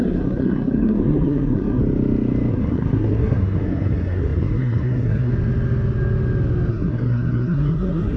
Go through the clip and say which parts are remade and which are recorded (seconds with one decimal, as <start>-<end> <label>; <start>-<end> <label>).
0.0-1.8 remade; 1.8-2.5 recorded; 2.5-5.3 remade; 5.3-6.7 recorded; 6.7-8.2 remade